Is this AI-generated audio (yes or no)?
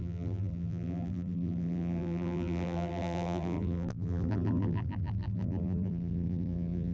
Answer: yes